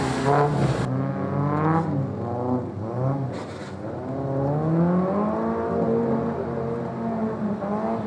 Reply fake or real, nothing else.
real